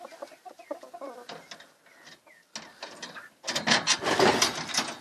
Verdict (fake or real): real